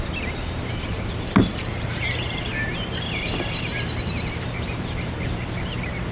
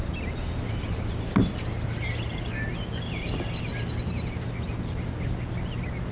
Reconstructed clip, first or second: first